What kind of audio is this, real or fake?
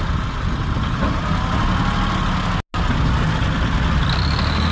real